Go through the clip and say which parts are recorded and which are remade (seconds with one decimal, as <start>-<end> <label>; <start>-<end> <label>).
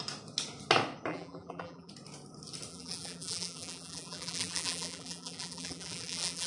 0.0-1.1 recorded; 1.1-1.9 remade; 1.9-2.7 recorded; 2.7-6.5 remade